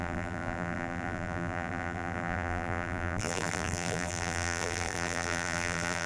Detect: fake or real fake